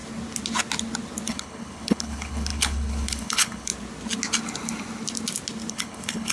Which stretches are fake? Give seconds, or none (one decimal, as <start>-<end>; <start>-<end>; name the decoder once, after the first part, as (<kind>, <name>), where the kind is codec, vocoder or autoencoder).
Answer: 1.3-3.7 (codec, HILCodec); 5.7-6.3